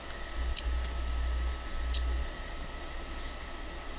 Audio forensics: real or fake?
real